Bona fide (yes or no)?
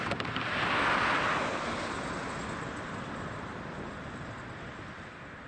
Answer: yes